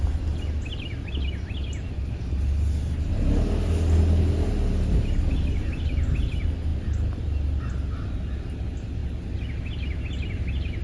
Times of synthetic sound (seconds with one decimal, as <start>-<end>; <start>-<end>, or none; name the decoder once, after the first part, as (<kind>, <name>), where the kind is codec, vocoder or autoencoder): none